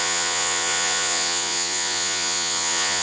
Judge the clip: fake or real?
fake